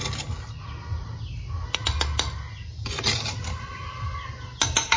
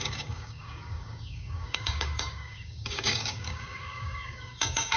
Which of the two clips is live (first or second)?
first